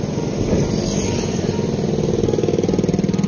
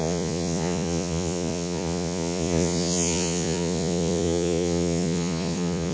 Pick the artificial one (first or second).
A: second